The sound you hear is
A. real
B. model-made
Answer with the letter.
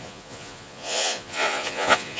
B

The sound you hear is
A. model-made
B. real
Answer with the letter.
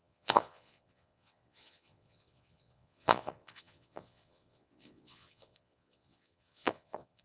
A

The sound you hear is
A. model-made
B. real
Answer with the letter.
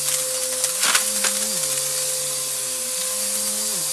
B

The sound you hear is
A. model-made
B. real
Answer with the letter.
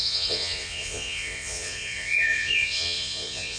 A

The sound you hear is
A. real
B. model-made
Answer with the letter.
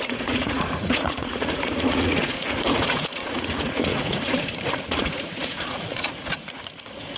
B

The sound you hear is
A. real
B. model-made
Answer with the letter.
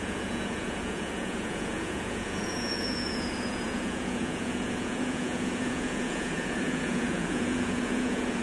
B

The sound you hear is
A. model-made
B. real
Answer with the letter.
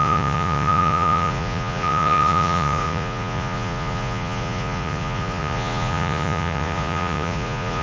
A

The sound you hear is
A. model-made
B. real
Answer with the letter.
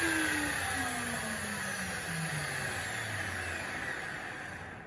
B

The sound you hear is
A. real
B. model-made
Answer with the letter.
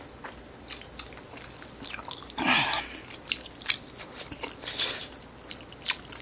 A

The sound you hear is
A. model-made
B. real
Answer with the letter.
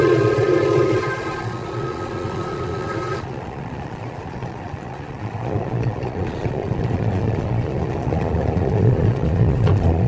A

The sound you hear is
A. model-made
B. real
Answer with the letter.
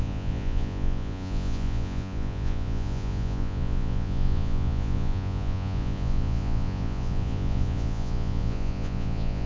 A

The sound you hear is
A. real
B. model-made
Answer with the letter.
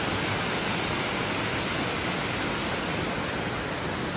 A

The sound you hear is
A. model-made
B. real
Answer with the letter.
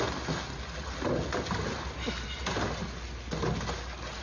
B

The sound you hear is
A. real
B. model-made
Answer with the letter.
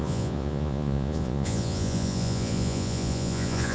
B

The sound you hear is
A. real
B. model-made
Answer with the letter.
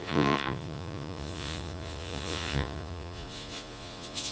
B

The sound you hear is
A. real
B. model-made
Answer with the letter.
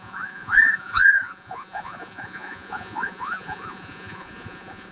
B